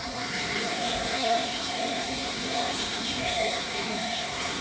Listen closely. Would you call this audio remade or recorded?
remade